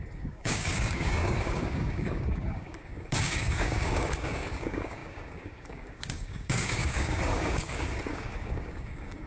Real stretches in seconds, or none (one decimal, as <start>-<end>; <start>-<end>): none